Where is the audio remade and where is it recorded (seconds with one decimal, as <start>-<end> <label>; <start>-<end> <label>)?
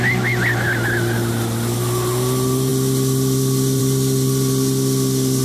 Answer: 0.0-5.4 recorded